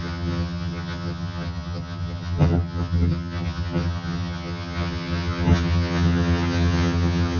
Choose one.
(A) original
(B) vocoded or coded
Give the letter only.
B